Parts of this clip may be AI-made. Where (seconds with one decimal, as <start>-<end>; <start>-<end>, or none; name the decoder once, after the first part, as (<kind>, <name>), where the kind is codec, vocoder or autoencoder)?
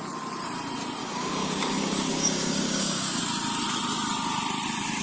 1.0-3.2 (codec, DAC)